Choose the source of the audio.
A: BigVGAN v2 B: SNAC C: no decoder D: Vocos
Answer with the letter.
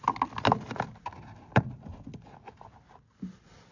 C